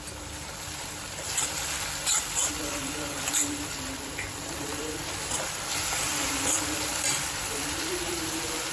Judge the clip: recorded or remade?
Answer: remade